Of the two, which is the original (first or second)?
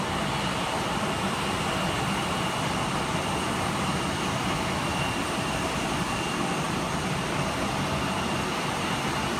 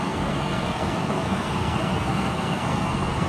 first